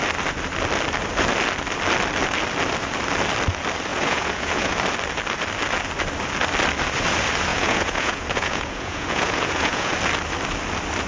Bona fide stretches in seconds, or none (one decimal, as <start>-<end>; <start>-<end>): 0.0-3.9; 4.7-7.5; 9.9-11.1